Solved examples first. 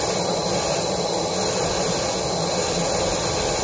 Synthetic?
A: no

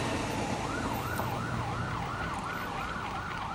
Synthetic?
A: yes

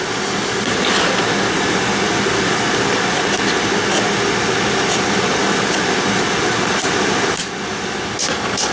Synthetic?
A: no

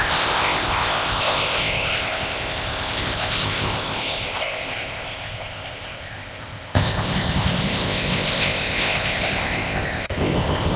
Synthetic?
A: yes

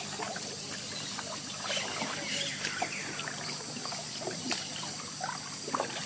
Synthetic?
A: no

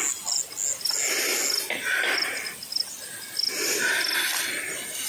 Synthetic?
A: no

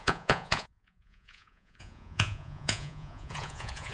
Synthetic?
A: yes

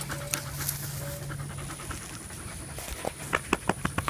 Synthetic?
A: no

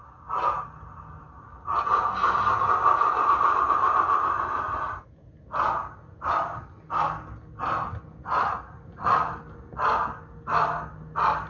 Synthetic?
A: no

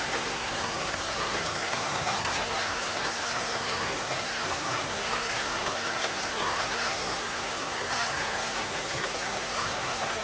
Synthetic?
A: yes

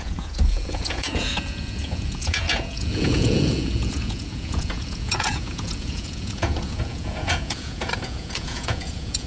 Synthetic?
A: yes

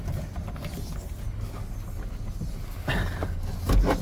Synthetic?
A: no